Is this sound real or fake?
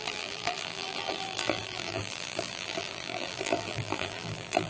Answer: fake